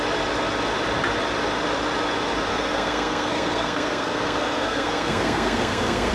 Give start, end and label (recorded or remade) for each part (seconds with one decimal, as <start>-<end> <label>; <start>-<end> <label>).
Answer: 0.0-2.5 recorded; 2.5-6.1 remade